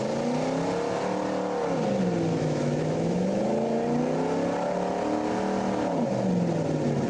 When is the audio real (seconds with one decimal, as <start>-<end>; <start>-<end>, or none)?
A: 0.0-2.3; 3.4-7.1